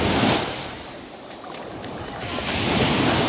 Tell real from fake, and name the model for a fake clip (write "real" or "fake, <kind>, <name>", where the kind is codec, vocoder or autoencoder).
real